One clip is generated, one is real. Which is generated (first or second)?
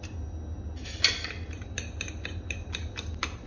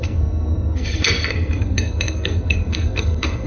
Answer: second